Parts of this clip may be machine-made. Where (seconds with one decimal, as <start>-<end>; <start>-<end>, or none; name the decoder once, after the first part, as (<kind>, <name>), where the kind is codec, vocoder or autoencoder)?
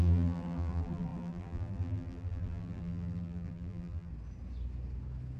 0.0-4.1 (vocoder, BigVGAN v2)